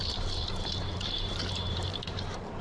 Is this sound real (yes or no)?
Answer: no